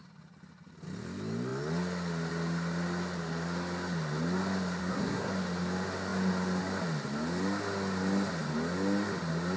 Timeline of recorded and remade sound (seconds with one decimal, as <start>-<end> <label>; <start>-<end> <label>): 0.0-4.8 recorded; 4.8-5.3 remade; 5.3-9.6 recorded